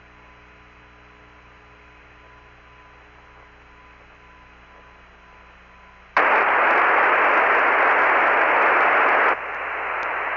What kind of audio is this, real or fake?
real